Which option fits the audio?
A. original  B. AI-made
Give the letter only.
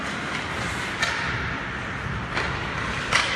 A